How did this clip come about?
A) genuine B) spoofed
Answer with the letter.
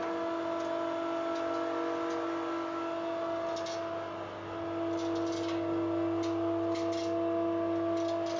A